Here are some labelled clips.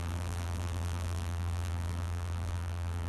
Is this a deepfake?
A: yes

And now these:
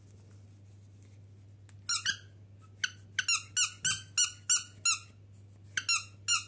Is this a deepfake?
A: no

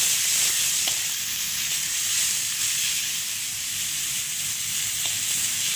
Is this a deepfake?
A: no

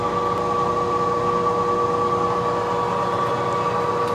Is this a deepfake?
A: no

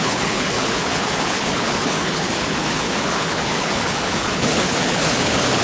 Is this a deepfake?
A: yes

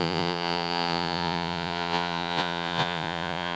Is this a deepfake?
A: yes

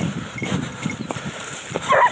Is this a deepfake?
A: no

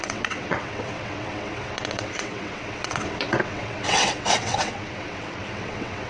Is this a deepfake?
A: yes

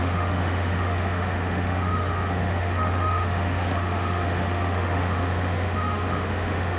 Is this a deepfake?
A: yes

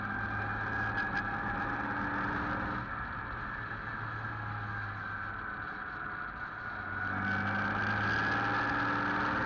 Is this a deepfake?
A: no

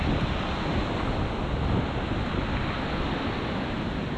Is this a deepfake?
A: no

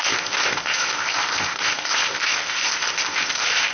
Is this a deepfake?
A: yes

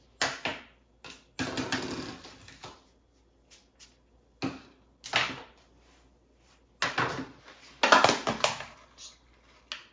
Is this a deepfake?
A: no